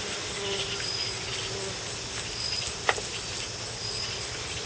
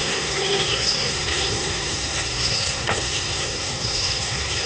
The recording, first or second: first